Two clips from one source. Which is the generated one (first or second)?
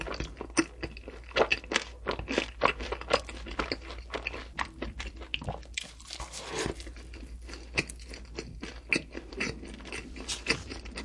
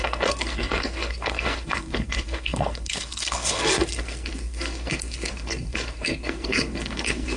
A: second